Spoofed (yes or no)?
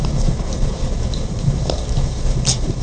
no